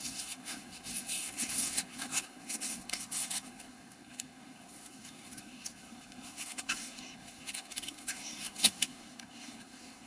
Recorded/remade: remade